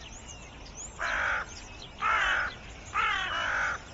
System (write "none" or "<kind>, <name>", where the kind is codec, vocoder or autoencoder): none